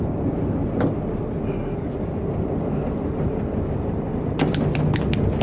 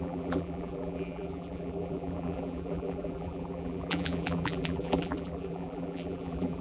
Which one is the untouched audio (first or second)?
first